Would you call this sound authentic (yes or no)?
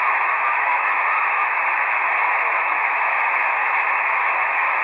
no